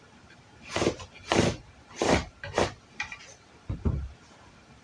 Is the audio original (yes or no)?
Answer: no